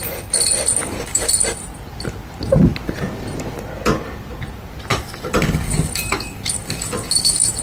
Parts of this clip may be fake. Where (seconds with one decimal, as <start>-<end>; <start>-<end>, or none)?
0.8-1.3; 4.9-7.6